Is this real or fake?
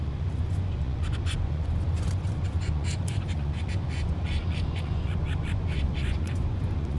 fake